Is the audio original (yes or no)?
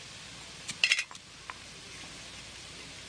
yes